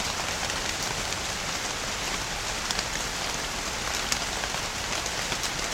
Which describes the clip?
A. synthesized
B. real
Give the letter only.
B